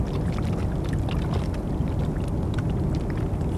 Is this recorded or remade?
recorded